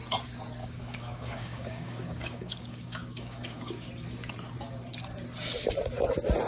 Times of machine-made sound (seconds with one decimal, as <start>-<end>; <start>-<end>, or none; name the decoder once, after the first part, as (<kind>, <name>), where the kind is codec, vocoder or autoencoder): 0.6-3.9 (codec, DAC)